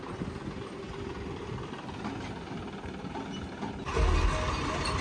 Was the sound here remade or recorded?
recorded